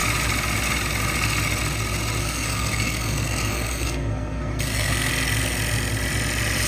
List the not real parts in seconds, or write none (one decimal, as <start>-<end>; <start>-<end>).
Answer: 2.2-5.1